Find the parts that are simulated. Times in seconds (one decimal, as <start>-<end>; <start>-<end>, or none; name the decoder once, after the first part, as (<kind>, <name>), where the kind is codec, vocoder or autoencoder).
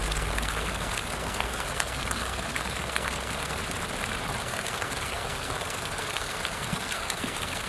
0.0-3.6 (codec, SNAC); 4.4-7.7